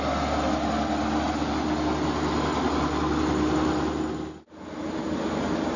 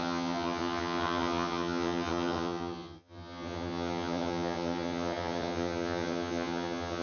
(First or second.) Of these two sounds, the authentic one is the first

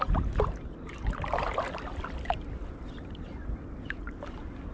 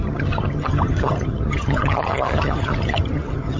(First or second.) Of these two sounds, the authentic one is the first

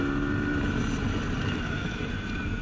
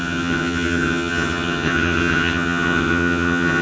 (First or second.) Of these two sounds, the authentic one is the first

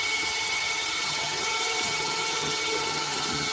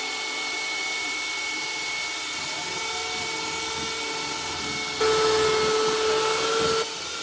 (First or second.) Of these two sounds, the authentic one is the second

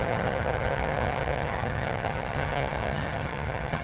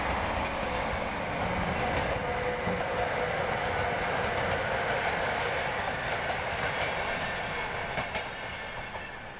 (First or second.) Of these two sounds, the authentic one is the second